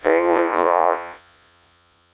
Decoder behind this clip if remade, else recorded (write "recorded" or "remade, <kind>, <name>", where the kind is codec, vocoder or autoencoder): remade, vocoder, Vocos